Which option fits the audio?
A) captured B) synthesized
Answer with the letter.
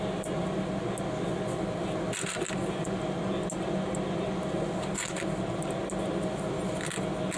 A